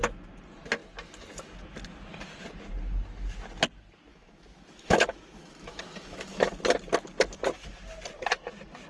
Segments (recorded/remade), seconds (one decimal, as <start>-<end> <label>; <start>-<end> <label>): 0.0-4.1 recorded; 4.1-6.5 remade; 6.5-8.9 recorded